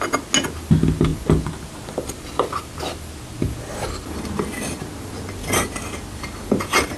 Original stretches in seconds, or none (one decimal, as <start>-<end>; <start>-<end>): 0.0-7.0